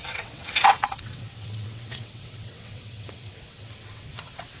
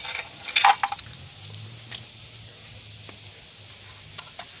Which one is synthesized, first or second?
first